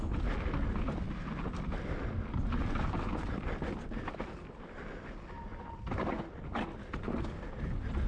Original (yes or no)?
yes